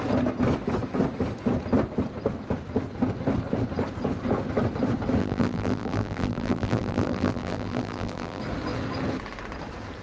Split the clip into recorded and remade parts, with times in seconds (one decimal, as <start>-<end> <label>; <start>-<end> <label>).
0.0-5.2 recorded; 5.2-8.4 remade; 8.4-10.0 recorded